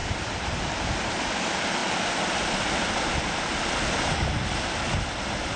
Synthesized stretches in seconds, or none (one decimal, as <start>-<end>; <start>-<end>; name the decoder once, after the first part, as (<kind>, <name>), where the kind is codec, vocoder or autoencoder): none

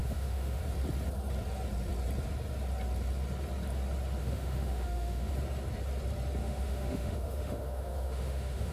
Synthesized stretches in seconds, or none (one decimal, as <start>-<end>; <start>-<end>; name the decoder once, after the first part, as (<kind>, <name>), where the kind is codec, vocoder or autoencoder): 0.0-0.6 (autoencoder, DAC-VAE); 4.2-5.3; 6.4-8.7

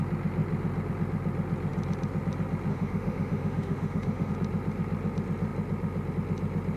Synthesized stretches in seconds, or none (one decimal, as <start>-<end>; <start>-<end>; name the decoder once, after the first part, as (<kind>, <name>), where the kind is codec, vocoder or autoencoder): 2.7-4.3 (autoencoder, DAC-VAE)

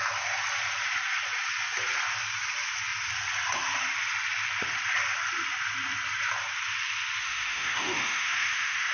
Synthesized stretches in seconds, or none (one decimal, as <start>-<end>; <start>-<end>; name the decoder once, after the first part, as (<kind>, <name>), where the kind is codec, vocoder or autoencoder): 7.2-8.9 (autoencoder, DAC-VAE)

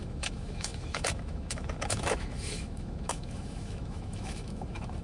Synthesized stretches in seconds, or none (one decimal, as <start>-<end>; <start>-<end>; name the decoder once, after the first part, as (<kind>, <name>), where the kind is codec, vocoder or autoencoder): 0.0-5.0 (autoencoder, DAC-VAE)

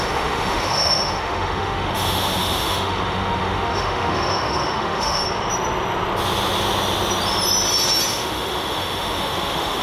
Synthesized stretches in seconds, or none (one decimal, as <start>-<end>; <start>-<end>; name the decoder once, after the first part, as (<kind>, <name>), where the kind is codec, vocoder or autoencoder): 0.0-5.2 (autoencoder, DAC-VAE); 8.1-9.8

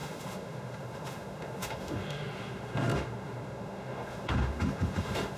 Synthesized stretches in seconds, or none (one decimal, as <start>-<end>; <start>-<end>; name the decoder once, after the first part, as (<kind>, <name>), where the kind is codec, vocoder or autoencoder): 0.0-5.4 (autoencoder, DAC-VAE)